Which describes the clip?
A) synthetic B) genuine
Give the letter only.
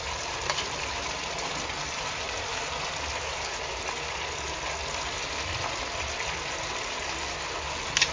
B